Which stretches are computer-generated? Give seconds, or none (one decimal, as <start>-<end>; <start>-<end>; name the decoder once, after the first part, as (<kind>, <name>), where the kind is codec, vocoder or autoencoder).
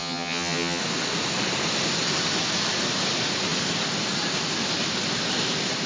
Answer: 0.0-0.8 (vocoder, HiFi-GAN)